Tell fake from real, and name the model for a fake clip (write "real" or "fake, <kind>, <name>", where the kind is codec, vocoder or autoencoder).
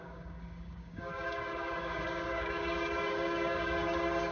fake, codec, DAC